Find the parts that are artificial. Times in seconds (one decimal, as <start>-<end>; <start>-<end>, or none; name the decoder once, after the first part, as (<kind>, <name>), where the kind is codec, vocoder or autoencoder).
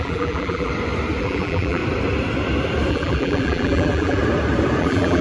0.0-0.7 (vocoder, BigVGAN v2); 1.2-1.8; 2.9-4.2; 4.8-5.2